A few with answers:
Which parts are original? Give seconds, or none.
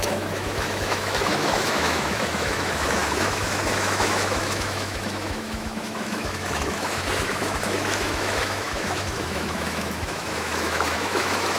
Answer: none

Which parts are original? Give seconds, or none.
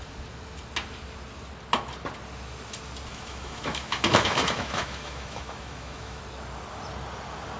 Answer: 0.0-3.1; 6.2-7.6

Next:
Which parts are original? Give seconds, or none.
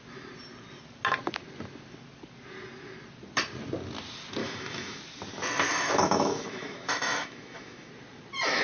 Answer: 0.0-4.4; 5.0-5.7; 7.9-8.6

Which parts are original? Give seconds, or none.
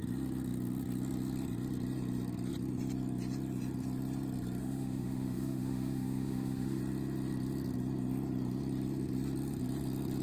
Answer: 0.0-4.6; 6.8-10.2